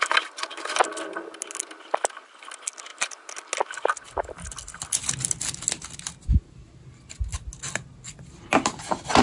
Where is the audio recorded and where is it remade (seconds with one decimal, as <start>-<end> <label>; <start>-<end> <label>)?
0.0-9.2 recorded